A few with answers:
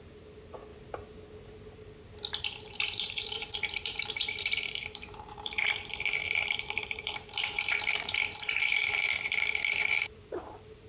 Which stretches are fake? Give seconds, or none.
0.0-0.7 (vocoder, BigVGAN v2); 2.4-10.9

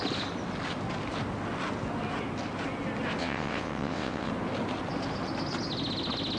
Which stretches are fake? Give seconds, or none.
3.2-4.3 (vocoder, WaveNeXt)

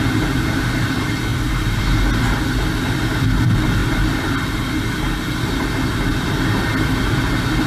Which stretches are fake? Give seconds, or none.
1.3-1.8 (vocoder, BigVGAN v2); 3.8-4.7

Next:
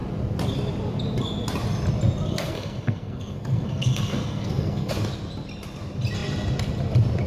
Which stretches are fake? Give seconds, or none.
2.3-4.9 (codec, SNAC)